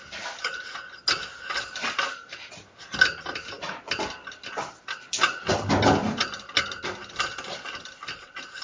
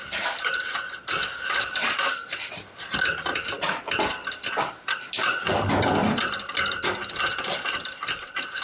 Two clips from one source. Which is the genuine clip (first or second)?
first